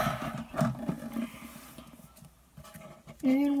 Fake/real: real